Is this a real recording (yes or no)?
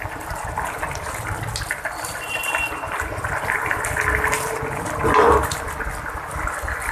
yes